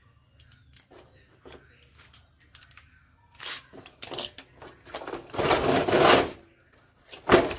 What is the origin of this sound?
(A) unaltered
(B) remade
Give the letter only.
A